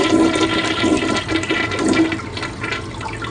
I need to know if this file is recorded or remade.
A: recorded